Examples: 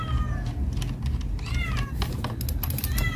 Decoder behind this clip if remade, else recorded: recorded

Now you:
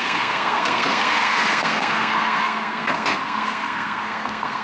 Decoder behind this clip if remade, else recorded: remade, codec, SNAC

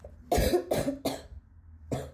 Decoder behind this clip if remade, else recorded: recorded